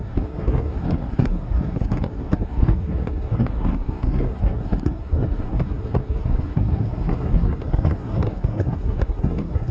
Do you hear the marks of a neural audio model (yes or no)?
yes